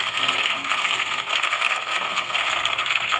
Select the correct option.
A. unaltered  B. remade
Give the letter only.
B